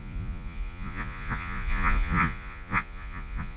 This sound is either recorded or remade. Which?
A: remade